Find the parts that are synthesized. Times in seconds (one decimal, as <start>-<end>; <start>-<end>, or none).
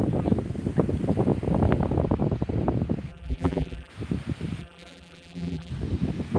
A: 3.1-3.9; 4.6-5.7